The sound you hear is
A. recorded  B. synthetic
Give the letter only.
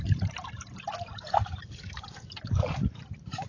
B